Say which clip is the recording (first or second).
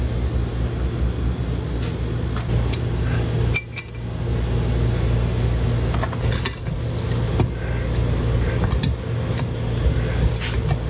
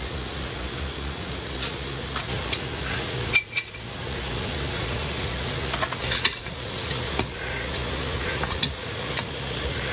first